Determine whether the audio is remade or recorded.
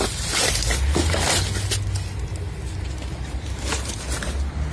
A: recorded